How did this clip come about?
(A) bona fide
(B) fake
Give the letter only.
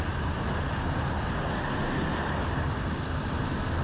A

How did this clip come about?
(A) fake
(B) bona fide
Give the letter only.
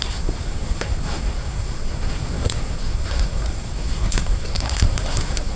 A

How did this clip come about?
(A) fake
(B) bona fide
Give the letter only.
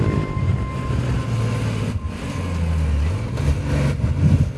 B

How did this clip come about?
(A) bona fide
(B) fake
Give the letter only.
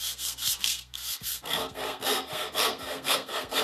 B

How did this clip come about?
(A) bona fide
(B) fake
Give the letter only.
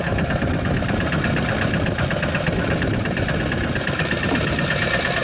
A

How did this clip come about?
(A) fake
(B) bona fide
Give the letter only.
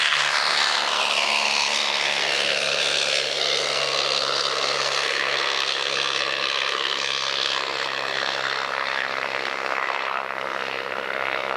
A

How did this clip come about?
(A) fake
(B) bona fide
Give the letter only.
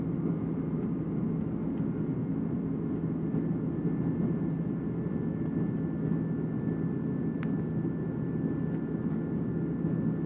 B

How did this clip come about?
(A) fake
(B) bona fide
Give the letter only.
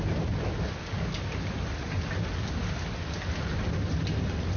B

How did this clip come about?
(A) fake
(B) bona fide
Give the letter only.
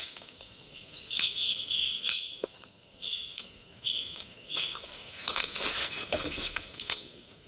A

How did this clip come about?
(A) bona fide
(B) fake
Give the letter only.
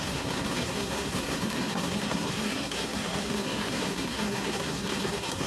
B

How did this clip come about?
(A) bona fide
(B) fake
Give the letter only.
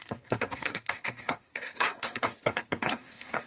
B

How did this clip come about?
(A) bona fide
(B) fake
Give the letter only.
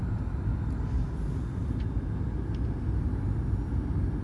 A